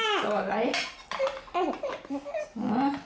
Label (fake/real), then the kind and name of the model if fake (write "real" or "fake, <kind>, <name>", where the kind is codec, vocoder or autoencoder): real